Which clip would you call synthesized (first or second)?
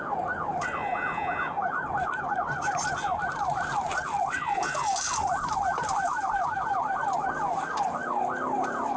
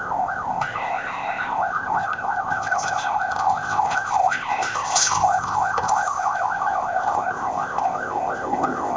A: second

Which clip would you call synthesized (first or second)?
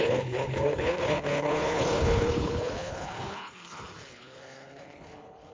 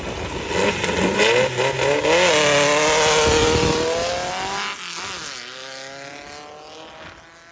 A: first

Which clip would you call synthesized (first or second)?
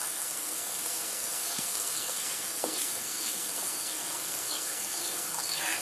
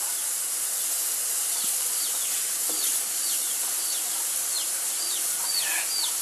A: first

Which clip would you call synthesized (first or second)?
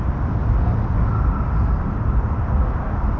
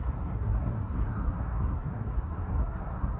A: second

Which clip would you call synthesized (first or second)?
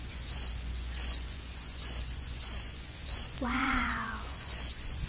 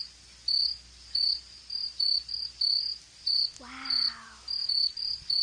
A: first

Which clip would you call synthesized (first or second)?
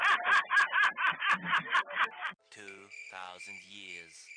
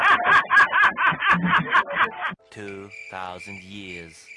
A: first